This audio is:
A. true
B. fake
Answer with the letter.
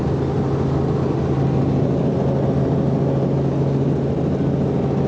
A